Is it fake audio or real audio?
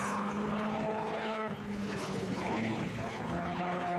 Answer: fake